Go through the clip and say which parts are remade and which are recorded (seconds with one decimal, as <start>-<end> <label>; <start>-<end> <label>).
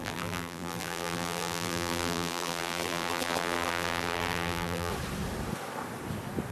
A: 0.0-4.9 remade; 4.9-6.5 recorded